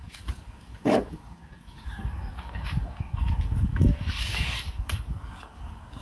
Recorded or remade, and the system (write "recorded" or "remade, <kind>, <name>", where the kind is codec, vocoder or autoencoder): remade, codec, DAC